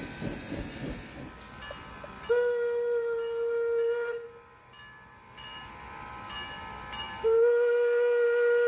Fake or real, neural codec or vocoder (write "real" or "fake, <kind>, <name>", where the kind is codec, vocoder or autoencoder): real